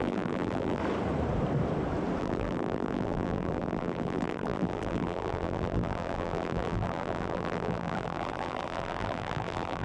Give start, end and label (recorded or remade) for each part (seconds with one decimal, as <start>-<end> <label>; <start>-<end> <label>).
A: 0.0-0.8 remade; 0.8-2.2 recorded; 2.2-9.8 remade